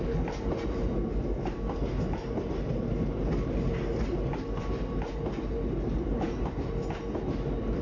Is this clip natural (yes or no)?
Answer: yes